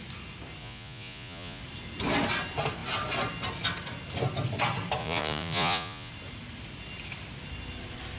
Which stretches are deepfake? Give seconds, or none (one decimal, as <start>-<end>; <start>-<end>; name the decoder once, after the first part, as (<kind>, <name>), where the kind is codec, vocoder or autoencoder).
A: 0.6-1.6 (vocoder, Vocos); 5.0-6.1